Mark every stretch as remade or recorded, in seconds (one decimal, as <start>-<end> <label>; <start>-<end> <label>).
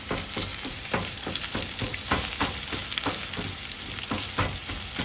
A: 0.0-0.5 recorded; 0.5-1.3 remade; 1.3-1.9 recorded; 1.9-2.4 remade; 2.4-5.0 recorded